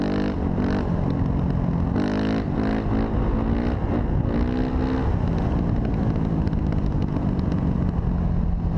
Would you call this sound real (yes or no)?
yes